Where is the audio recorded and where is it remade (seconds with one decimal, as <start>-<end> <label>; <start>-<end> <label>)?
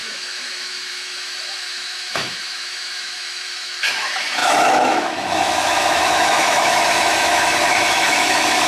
0.0-8.7 remade